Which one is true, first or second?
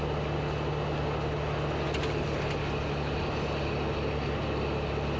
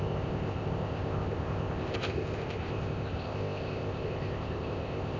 first